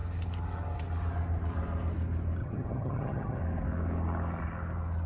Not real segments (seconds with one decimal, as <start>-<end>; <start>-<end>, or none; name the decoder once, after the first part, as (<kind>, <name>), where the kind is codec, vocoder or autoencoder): 2.4-3.4 (vocoder, HiFi-GAN)